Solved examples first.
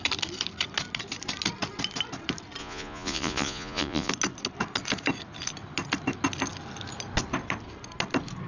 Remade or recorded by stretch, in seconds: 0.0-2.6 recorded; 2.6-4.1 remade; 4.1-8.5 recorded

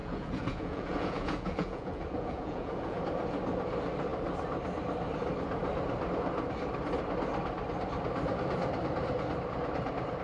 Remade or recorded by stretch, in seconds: 0.0-3.0 remade; 3.0-10.2 recorded